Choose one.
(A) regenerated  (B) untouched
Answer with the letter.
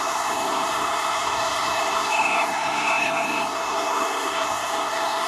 A